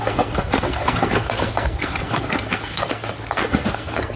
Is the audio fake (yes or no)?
yes